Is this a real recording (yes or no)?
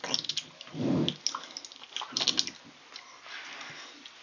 yes